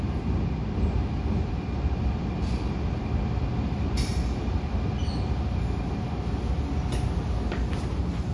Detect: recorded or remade recorded